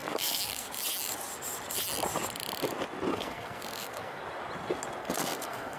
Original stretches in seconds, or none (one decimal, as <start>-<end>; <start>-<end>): 0.7-3.1; 4.2-5.0